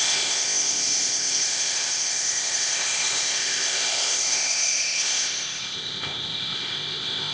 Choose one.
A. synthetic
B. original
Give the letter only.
A